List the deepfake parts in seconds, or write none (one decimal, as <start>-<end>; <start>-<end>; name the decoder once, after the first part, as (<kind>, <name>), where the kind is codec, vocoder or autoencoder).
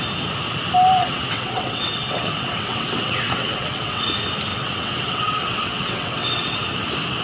1.0-4.0 (vocoder, WaveNeXt); 4.5-6.6